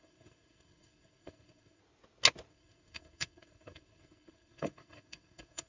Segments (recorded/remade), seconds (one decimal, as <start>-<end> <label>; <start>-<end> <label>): 0.0-1.8 remade; 1.8-2.5 recorded; 2.5-5.7 remade